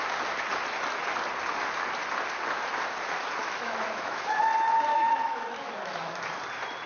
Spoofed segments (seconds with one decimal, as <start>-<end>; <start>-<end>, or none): 3.4-4.4; 4.9-6.2